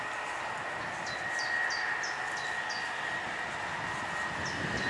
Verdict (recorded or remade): recorded